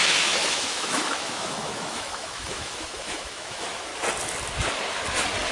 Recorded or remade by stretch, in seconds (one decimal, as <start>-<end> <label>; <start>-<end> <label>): 0.0-3.9 remade; 3.9-5.5 recorded